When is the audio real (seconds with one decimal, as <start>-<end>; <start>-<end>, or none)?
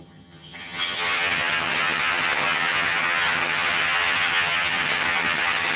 none